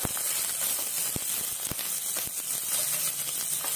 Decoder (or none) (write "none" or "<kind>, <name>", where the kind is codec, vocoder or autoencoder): none